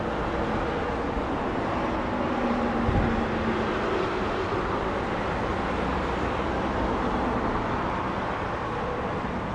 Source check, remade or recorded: recorded